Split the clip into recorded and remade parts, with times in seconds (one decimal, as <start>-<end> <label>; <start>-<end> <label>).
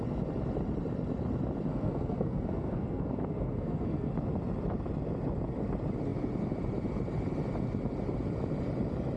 0.0-1.7 recorded; 1.7-4.1 remade; 4.1-9.2 recorded